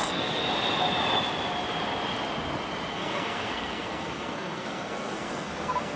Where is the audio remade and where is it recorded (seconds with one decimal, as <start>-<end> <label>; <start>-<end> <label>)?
0.0-0.4 remade; 0.4-2.9 recorded; 2.9-6.0 remade